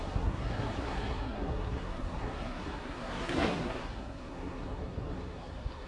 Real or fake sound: fake